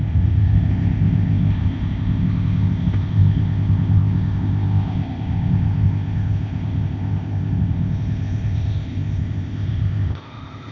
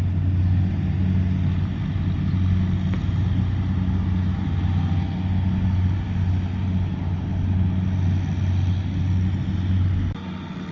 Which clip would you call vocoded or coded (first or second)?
first